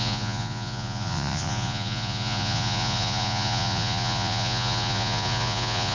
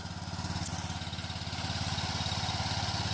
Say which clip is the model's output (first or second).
first